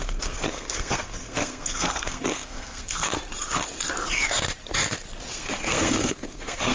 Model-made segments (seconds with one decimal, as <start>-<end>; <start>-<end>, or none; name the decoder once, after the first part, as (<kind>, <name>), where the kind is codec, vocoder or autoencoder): 0.0-3.1 (codec, SNAC); 5.3-6.7